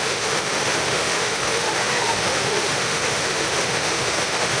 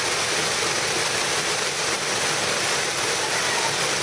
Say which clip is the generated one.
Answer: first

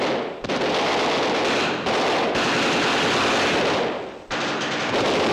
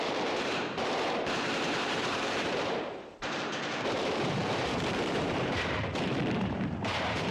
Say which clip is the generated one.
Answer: second